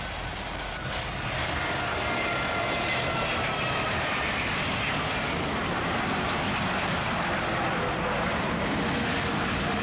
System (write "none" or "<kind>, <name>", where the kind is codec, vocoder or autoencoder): none